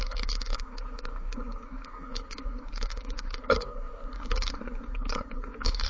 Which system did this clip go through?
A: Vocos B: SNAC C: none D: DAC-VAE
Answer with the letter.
B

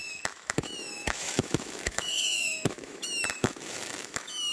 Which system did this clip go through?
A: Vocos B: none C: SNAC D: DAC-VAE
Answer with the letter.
D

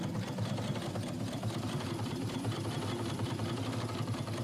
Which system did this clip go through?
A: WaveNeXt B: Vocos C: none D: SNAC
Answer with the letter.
C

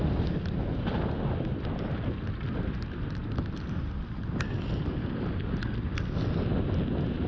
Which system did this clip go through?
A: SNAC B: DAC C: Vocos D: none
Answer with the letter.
D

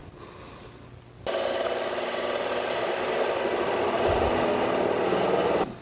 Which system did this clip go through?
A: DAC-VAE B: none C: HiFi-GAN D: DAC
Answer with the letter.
B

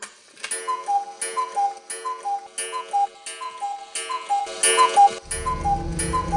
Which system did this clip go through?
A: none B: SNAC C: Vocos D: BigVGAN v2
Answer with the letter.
A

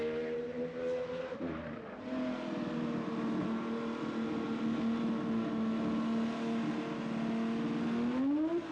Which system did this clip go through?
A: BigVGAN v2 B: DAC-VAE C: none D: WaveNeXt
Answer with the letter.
C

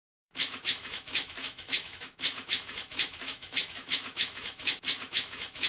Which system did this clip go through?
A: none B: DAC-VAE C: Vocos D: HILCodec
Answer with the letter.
B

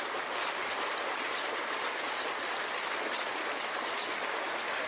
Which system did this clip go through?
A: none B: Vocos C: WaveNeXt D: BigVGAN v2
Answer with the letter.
A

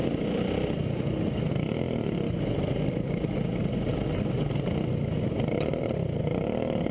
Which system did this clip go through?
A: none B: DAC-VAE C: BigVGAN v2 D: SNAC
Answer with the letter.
A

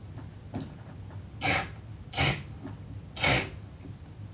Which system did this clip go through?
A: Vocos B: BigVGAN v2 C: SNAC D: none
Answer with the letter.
D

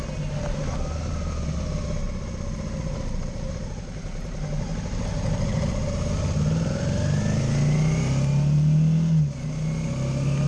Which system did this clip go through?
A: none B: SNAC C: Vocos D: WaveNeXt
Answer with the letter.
A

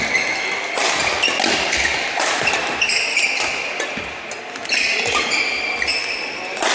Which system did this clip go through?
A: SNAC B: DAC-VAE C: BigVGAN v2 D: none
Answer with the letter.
D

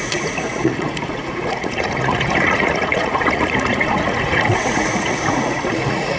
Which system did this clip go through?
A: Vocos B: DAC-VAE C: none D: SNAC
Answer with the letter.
A